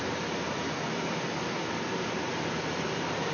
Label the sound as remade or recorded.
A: remade